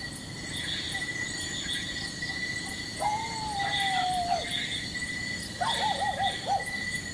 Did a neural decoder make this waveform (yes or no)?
no